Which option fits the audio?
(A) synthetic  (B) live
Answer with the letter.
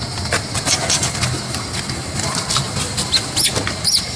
B